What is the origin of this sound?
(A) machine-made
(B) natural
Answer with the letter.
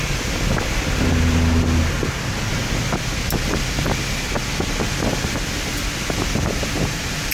B